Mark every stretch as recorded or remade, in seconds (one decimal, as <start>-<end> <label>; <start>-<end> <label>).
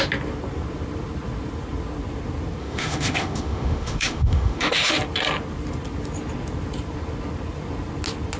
0.0-2.6 recorded; 2.6-4.9 remade; 4.9-8.4 recorded